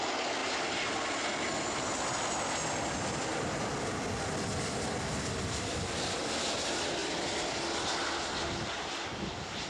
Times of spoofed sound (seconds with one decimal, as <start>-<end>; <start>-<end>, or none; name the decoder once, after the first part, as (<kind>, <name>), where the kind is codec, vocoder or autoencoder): none